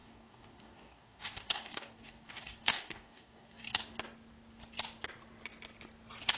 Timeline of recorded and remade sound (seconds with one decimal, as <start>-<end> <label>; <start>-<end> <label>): 0.0-3.8 remade; 3.8-6.4 recorded